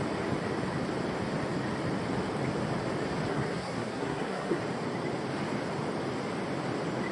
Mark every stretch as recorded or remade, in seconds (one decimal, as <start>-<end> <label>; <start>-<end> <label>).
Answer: 0.0-3.3 recorded; 3.3-4.6 remade; 4.6-7.1 recorded